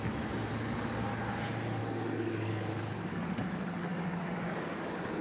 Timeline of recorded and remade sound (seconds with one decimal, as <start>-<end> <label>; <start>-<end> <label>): 0.0-0.5 recorded; 0.5-1.2 remade; 1.2-1.8 recorded; 1.8-5.2 remade